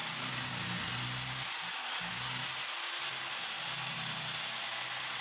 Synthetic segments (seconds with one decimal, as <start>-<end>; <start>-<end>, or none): none